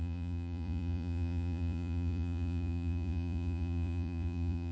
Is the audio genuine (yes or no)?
no